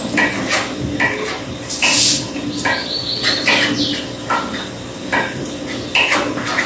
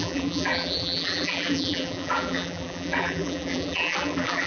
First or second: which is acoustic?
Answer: first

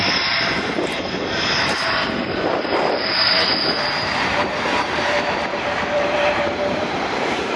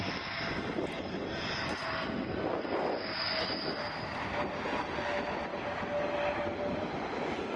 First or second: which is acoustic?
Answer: second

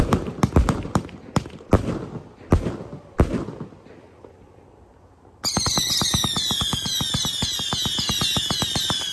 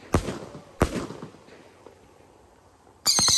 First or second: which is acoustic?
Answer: first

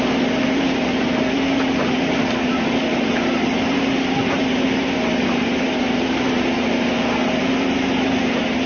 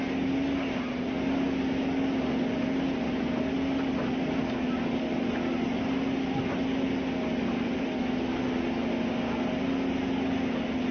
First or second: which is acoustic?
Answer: second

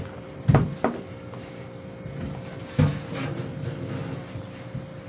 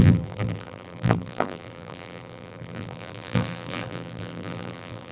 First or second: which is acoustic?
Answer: first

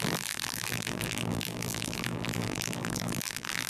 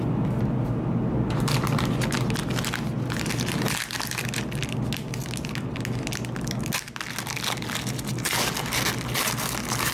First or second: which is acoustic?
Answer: second